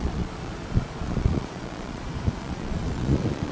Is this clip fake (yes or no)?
yes